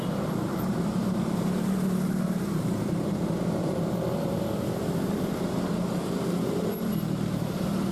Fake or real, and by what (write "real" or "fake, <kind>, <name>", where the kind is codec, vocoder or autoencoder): fake, vocoder, BigVGAN v2